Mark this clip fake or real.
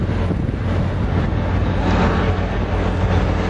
real